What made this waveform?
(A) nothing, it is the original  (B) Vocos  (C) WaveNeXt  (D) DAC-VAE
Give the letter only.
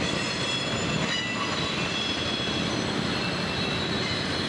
A